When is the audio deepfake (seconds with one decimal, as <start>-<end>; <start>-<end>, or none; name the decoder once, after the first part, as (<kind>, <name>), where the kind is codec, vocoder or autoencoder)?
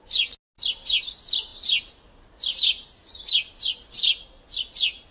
none